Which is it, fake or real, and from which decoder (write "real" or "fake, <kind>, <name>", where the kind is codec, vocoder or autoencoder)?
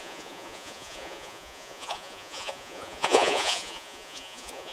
fake, vocoder, Vocos